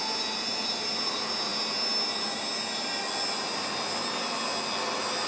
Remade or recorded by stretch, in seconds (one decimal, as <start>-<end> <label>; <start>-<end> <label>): 0.0-5.3 recorded